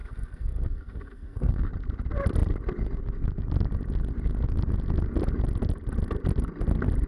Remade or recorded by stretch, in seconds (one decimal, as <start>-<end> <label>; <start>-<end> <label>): 0.0-1.7 remade; 1.7-7.1 recorded